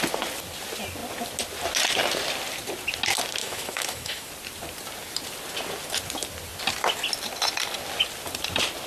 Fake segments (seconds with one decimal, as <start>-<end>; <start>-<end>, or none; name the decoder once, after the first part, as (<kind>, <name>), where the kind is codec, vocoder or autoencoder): 3.4-4.3 (autoencoder, DAC-VAE)